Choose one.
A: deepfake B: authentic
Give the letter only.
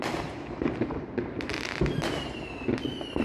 B